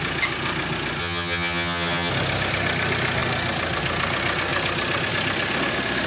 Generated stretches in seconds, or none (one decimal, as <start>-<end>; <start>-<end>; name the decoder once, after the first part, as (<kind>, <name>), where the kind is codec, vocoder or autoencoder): 1.0-2.1 (vocoder, HiFi-GAN)